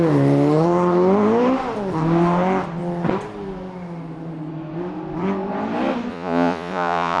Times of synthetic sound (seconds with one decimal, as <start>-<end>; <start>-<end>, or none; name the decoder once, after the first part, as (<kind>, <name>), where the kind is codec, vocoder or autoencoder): 6.1-7.2 (vocoder, Vocos)